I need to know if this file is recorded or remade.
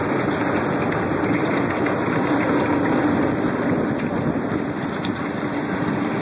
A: recorded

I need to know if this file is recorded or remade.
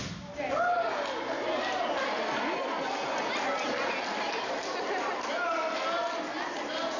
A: recorded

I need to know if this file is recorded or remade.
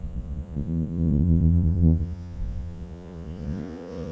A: remade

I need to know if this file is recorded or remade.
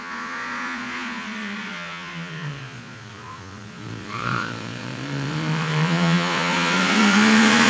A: remade